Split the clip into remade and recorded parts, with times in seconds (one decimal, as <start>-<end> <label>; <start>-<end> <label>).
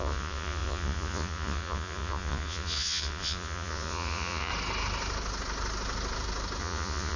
0.0-4.5 remade; 4.5-6.6 recorded; 6.6-7.2 remade